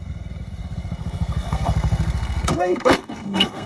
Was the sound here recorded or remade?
remade